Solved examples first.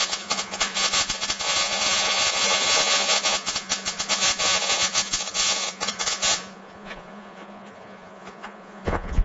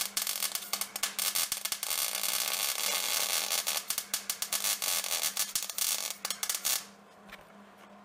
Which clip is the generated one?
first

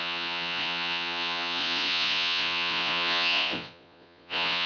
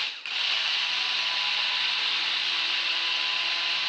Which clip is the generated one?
first